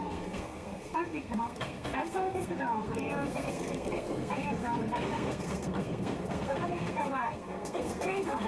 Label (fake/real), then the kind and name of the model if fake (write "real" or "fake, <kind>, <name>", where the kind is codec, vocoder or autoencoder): fake, codec, SNAC